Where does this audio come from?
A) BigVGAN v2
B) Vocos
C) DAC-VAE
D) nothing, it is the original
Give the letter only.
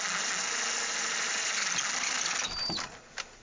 D